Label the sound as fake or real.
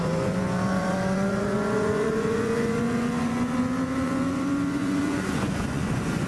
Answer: fake